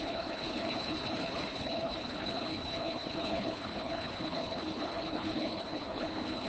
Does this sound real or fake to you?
fake